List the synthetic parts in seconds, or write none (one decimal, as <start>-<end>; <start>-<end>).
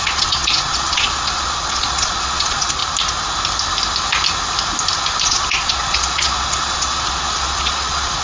0.0-2.8; 5.2-8.2